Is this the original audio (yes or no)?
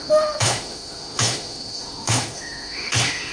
no